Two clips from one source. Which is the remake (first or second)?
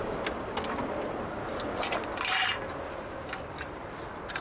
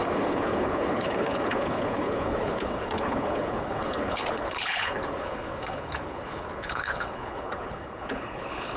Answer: second